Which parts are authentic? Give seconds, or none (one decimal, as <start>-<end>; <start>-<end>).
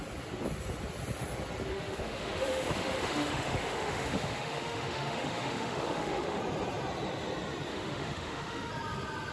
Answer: 0.0-1.7; 6.4-7.7; 8.7-9.3